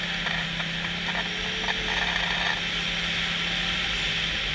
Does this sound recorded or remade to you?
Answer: recorded